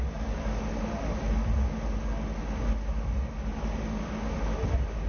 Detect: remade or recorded recorded